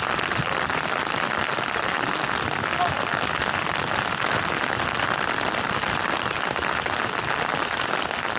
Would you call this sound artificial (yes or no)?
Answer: no